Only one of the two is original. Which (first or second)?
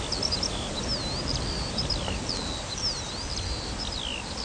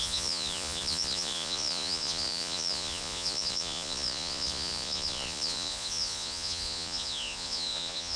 first